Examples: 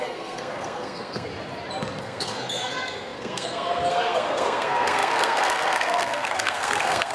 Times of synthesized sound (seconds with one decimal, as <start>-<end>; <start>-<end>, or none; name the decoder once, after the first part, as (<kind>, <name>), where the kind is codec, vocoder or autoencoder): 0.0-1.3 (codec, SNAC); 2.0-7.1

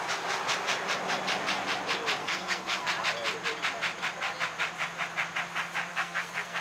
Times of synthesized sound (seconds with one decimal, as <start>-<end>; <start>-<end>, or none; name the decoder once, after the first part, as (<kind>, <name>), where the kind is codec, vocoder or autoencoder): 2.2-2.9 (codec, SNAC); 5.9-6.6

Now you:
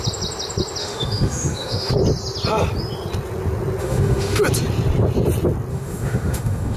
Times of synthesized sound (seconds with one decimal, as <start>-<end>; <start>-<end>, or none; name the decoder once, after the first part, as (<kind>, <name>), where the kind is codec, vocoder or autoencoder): 0.8-1.9 (autoencoder, DAC-VAE); 3.8-4.4; 5.7-6.8

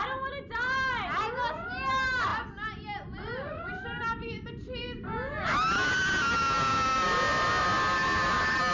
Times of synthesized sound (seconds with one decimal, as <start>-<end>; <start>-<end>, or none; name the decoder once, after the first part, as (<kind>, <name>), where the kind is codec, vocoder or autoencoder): none

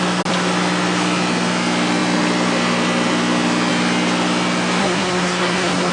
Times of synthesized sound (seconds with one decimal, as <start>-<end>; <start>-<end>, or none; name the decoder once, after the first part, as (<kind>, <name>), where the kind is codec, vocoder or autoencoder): 4.8-5.9 (codec, SNAC)

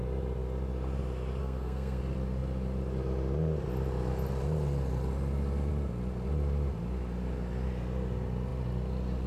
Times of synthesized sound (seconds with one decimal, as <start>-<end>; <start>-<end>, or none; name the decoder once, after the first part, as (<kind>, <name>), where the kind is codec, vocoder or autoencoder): 1.4-2.0 (codec, SNAC)